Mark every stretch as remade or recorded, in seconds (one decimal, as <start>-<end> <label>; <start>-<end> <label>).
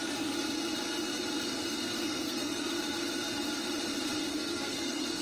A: 0.0-1.8 recorded; 1.8-2.7 remade; 2.7-4.3 recorded; 4.3-5.2 remade